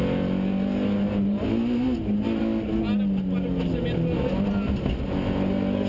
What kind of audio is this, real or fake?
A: real